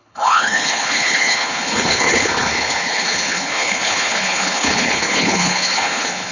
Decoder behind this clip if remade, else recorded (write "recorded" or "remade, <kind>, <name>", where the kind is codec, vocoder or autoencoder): remade, codec, HILCodec